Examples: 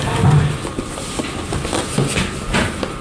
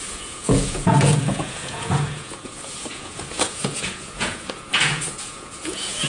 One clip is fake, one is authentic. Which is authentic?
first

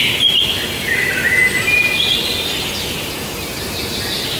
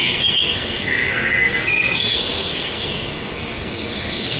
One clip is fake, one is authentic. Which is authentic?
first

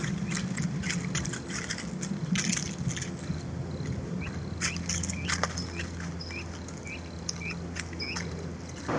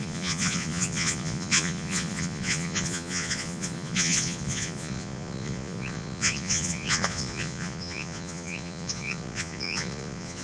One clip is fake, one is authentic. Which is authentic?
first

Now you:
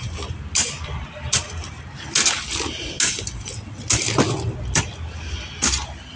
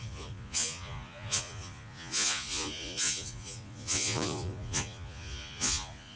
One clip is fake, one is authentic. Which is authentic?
first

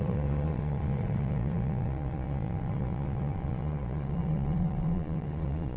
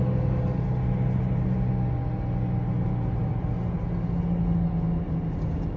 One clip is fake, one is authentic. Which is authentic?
second